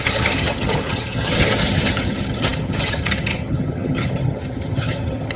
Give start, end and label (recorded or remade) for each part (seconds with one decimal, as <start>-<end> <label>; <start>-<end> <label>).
0.0-5.4 remade